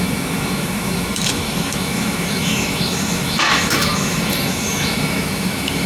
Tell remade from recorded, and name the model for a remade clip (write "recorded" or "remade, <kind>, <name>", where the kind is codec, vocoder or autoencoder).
remade, autoencoder, DAC-VAE